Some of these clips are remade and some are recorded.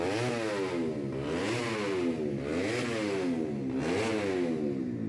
recorded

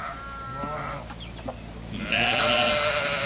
recorded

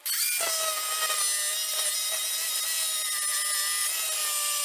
recorded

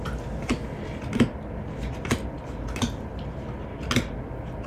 recorded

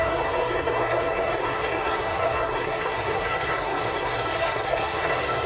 remade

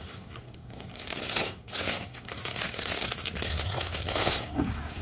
remade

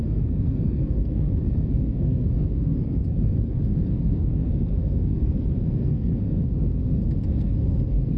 remade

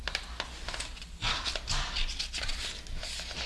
recorded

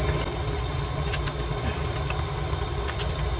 recorded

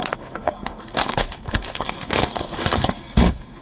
remade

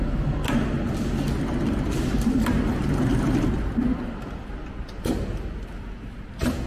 recorded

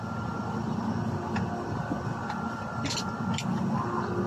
recorded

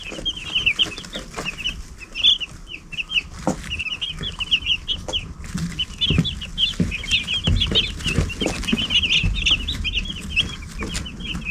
recorded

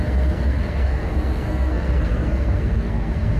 remade